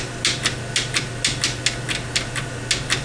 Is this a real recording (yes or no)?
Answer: yes